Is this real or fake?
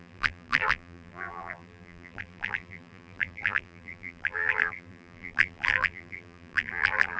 fake